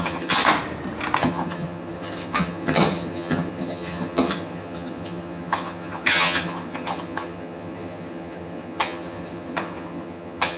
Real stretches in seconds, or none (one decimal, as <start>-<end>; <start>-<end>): 0.4-1.2